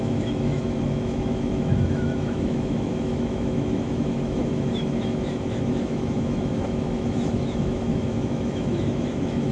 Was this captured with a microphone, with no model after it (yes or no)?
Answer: no